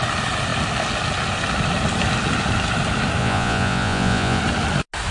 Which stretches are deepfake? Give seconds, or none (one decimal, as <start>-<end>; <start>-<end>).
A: 3.2-4.4